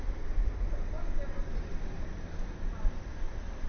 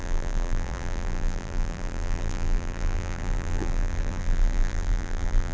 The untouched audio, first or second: first